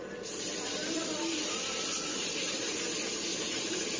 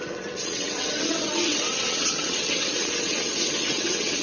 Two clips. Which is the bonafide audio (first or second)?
first